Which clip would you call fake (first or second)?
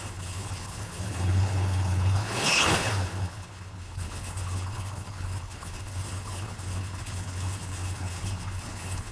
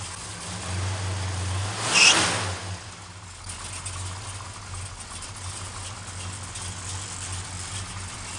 first